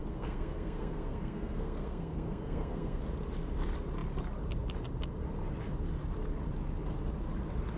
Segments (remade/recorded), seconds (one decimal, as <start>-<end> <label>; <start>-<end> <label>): 0.0-3.0 remade; 3.0-7.8 recorded